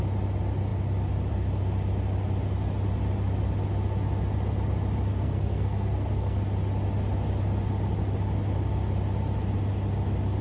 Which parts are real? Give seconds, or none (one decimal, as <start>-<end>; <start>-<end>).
0.0-5.1; 6.4-10.4